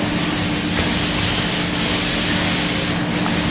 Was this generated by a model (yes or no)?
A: no